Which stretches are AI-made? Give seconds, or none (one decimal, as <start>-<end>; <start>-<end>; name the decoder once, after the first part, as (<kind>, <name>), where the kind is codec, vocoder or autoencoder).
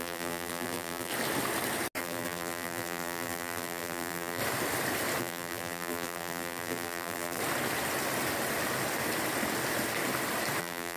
0.0-1.1 (vocoder, BigVGAN v2); 2.0-4.4; 5.2-7.4; 10.6-11.0